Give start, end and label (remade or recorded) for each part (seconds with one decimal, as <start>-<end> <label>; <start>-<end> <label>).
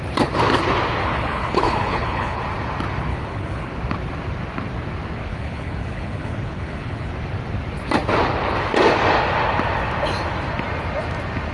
0.0-1.0 recorded; 1.0-2.4 remade; 2.4-3.1 recorded; 3.1-3.7 remade; 3.7-5.3 recorded; 5.3-7.1 remade; 7.1-11.5 recorded